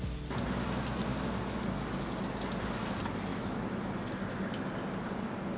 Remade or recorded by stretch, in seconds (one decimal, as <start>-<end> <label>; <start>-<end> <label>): 0.0-3.3 recorded; 3.3-3.8 remade; 3.8-5.6 recorded